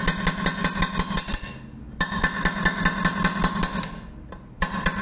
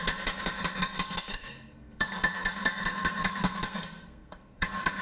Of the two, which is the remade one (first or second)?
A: second